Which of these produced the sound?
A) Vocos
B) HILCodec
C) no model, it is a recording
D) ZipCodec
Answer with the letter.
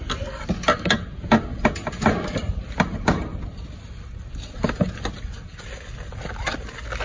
C